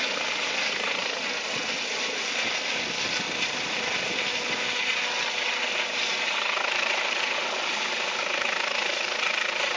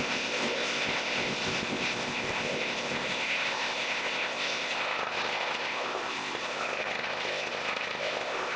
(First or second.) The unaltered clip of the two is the first